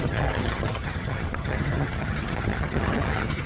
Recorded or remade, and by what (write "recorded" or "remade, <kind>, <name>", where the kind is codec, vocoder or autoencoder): remade, vocoder, HiFi-GAN